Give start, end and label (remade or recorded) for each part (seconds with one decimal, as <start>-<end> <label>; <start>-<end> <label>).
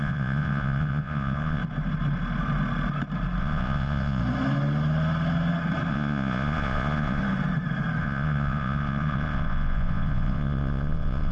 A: 0.0-1.6 remade; 1.6-3.4 recorded; 3.4-4.2 remade; 4.2-5.9 recorded; 5.9-7.2 remade; 7.2-8.0 recorded; 8.0-11.3 remade